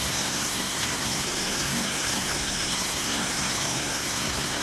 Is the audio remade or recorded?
remade